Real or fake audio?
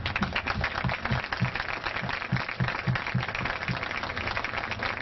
real